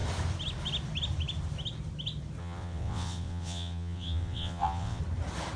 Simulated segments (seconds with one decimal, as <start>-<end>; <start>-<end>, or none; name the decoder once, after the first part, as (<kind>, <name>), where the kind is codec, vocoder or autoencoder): 2.4-5.0 (vocoder, WaveNeXt)